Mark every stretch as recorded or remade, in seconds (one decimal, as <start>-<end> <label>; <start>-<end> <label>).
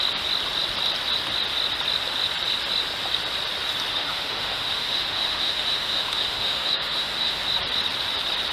0.0-3.9 recorded; 3.9-7.4 remade; 7.4-8.5 recorded